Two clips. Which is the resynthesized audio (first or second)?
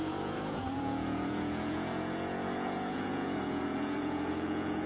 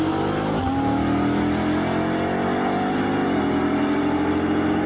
first